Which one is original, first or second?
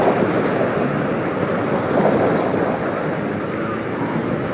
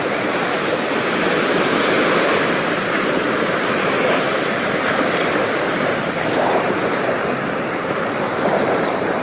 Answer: first